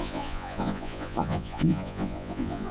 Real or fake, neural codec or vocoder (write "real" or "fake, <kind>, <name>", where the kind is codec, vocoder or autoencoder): fake, vocoder, Vocos